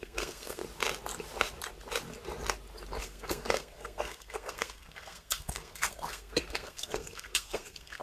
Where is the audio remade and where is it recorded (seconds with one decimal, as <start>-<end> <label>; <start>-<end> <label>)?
0.0-0.6 remade; 0.6-3.0 recorded; 3.0-8.0 remade